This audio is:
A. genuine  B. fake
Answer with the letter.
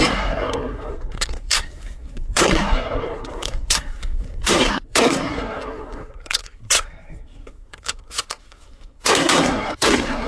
B